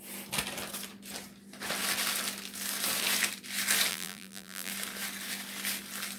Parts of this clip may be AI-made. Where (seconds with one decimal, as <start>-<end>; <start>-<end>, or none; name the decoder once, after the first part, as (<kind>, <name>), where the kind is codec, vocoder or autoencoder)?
3.9-4.7 (vocoder, BigVGAN v2)